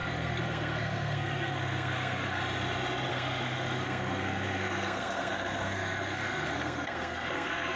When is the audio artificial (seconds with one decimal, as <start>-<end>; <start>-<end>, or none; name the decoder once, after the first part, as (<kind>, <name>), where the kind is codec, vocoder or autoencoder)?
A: 0.0-2.4 (codec, SNAC); 3.1-7.8